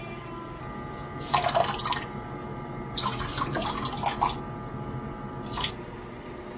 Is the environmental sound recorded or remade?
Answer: recorded